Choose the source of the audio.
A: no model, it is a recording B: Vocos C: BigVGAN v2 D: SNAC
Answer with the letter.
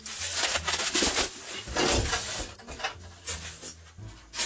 A